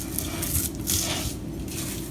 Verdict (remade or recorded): recorded